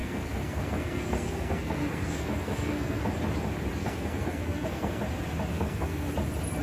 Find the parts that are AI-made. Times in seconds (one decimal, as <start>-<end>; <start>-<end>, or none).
0.0-3.0; 3.8-5.0; 5.5-6.1